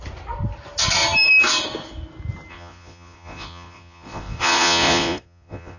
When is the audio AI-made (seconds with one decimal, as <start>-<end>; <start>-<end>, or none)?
2.5-5.8